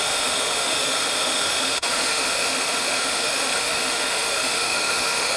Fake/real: fake